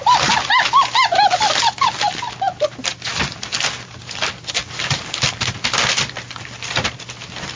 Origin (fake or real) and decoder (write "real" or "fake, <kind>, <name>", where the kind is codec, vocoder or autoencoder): real